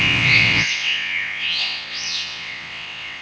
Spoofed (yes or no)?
yes